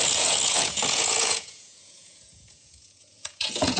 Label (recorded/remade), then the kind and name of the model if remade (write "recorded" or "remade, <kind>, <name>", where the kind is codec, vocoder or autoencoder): remade, vocoder, Vocos